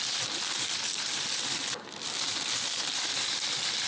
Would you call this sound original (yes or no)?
yes